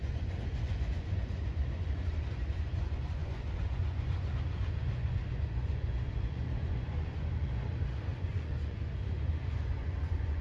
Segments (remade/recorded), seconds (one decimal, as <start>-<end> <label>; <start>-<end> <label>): 0.0-10.4 remade